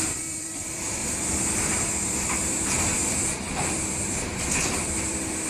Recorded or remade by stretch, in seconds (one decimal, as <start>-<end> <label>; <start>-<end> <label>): 0.0-5.5 remade